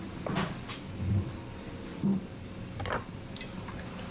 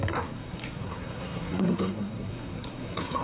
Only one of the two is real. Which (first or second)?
first